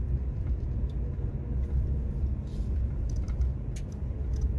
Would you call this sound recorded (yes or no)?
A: yes